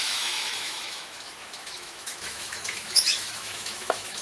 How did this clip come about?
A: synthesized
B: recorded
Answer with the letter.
A